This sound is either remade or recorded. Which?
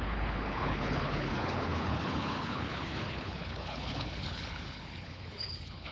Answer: remade